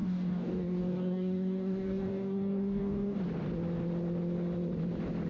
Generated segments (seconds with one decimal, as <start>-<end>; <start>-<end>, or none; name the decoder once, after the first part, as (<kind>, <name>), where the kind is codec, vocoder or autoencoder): 0.0-3.2 (codec, DAC)